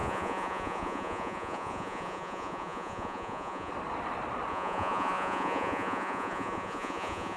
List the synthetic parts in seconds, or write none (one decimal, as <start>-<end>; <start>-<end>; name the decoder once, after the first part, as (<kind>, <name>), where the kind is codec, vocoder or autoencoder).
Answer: 0.0-3.7 (vocoder, Vocos); 4.5-7.4